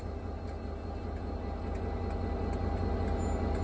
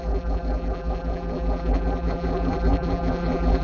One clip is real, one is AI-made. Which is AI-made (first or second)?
second